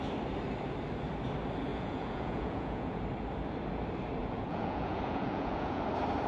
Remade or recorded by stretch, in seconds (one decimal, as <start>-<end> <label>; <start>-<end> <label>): 0.0-1.7 recorded; 1.7-3.0 remade; 3.0-4.2 recorded; 4.2-5.8 remade; 5.8-6.3 recorded